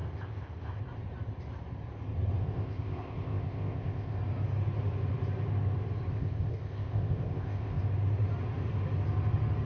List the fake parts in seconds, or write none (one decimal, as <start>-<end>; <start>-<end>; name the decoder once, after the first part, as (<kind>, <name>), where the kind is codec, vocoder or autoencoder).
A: 0.0-0.8 (codec, ZipCodec); 2.4-4.2; 6.1-7.8